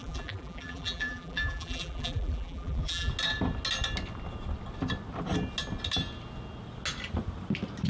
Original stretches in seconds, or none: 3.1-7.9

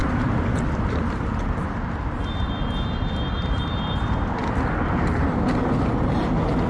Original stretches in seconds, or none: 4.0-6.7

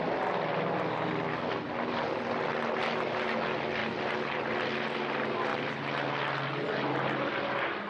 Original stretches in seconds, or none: 0.0-7.9

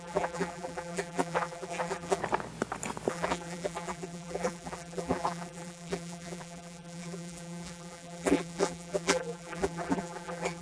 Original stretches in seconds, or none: 2.2-3.1

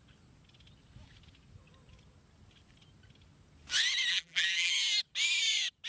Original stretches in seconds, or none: 0.0-4.1; 4.7-5.9

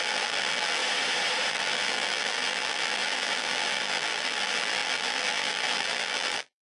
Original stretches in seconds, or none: 0.8-1.5